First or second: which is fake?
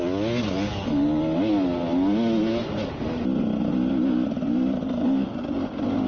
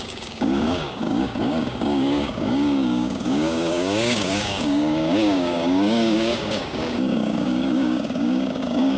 second